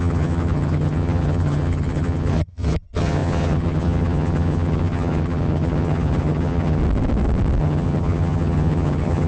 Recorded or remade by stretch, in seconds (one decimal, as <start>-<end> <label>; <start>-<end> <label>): 0.0-6.8 remade; 6.8-7.6 recorded; 7.6-9.3 remade